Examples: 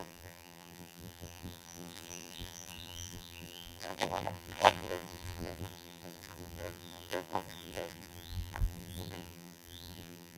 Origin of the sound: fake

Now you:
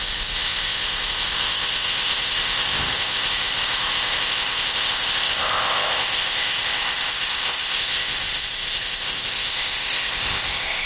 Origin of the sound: fake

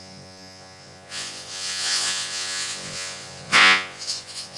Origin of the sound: fake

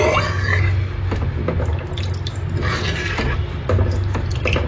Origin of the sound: real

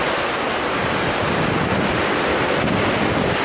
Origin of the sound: real